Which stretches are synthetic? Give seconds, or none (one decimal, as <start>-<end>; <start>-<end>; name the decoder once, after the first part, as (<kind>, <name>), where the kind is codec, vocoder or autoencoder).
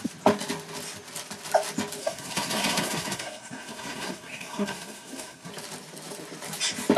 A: 2.0-5.5 (codec, SNAC)